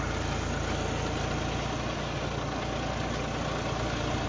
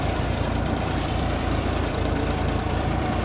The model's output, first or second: second